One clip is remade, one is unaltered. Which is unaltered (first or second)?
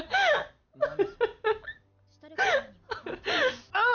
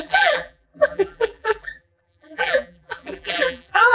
first